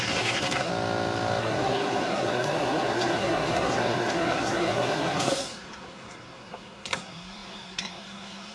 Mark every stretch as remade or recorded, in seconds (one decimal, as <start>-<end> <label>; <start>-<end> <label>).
0.0-0.7 remade; 0.7-1.4 recorded; 1.4-8.5 remade